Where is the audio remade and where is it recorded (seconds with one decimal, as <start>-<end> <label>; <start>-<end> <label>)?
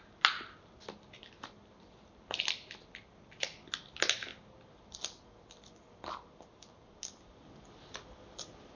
0.0-8.8 recorded